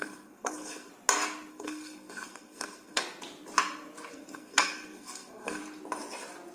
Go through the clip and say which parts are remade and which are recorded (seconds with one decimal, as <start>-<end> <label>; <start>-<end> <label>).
0.0-0.9 remade; 0.9-1.5 recorded; 1.5-3.0 remade; 3.0-4.1 recorded; 4.1-5.6 remade; 5.6-6.5 recorded